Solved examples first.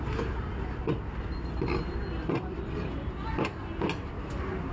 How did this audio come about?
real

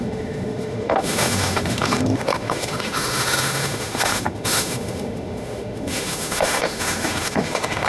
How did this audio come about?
fake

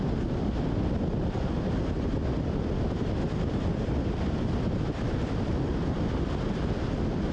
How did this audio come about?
real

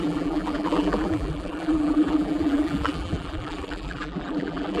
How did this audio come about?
fake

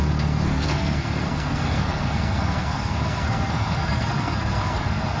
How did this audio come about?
fake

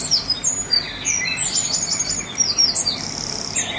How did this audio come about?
real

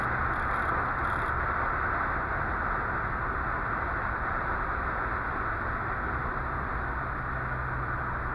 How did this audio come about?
real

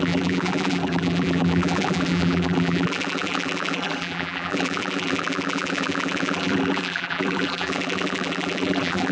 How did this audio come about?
fake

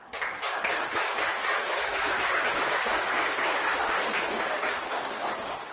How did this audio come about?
fake